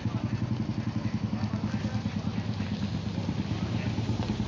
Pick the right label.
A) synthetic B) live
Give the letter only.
B